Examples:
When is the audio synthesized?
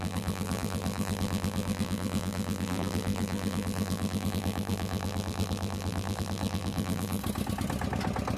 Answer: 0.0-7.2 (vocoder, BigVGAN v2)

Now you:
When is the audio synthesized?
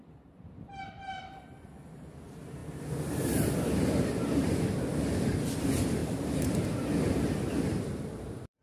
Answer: none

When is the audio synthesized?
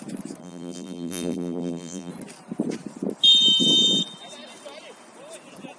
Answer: 0.4-2.1 (vocoder, BigVGAN v2)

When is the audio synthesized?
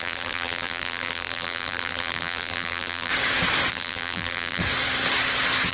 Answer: 0.0-3.1 (vocoder, BigVGAN v2); 3.7-4.6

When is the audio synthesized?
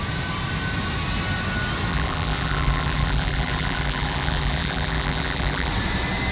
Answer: 1.9-5.7 (vocoder, BigVGAN v2)